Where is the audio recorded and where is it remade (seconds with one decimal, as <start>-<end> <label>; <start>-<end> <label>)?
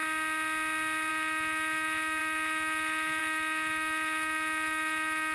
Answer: 0.0-1.1 recorded; 1.1-5.3 remade